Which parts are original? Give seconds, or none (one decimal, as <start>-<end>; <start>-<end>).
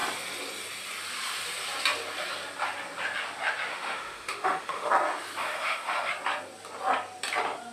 0.0-3.7; 4.9-5.4; 6.1-7.7